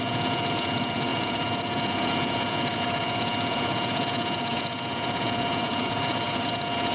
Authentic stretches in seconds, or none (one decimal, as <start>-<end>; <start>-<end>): none